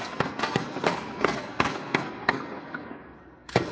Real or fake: fake